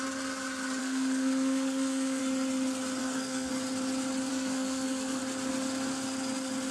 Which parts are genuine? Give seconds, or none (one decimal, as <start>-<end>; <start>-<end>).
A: 0.0-0.8; 2.2-3.0; 3.5-4.3; 5.2-6.7